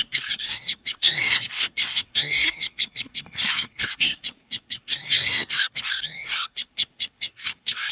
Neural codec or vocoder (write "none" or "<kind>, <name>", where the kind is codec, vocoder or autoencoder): codec, SNAC